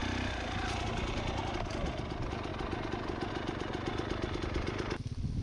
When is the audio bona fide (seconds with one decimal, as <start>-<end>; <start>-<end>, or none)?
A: 0.0-5.4